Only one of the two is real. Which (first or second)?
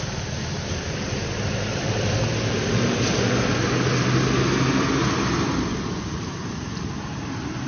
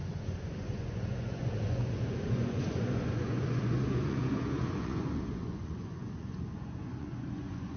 first